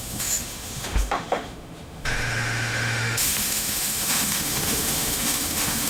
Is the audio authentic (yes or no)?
no